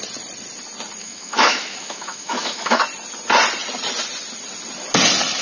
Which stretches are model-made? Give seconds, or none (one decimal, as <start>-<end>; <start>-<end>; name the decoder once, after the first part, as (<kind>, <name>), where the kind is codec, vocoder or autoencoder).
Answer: 1.0-2.8 (autoencoder, DAC-VAE)